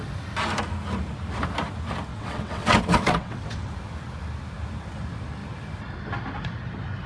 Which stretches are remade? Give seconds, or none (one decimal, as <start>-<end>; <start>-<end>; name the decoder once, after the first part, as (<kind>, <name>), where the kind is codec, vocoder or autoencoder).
2.1-3.7 (vocoder, WaveNeXt)